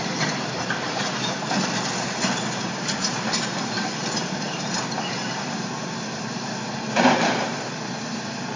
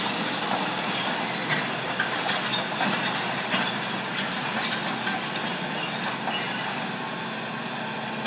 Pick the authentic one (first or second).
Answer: second